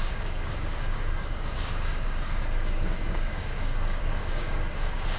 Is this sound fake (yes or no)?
yes